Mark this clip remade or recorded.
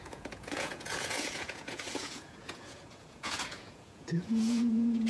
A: remade